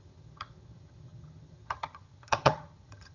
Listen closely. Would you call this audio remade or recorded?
remade